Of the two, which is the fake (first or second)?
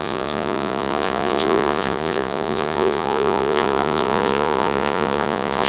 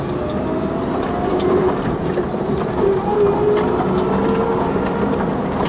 first